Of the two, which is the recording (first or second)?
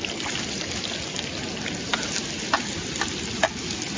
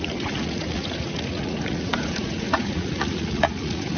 first